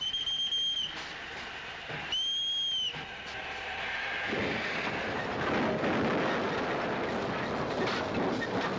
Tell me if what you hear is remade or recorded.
recorded